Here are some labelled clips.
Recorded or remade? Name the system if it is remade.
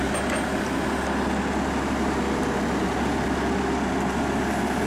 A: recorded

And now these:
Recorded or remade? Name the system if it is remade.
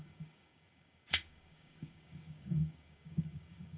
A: remade, codec, DAC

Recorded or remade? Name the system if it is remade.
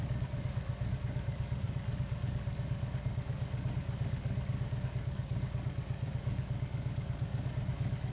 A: remade, codec, DAC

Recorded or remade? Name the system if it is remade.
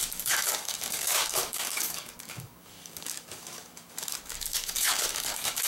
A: remade, codec, DAC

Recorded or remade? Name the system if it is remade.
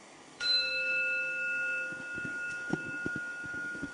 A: remade, codec, DAC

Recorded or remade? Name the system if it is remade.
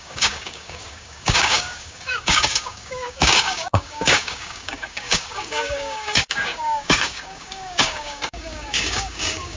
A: remade, codec, DAC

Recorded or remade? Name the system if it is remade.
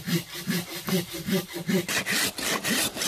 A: recorded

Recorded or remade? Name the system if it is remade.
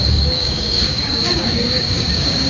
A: remade, codec, DAC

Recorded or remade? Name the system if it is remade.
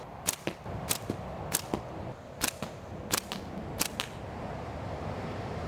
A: recorded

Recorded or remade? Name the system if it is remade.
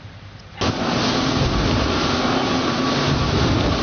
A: recorded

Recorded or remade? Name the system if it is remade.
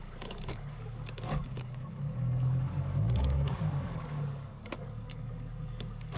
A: remade, codec, DAC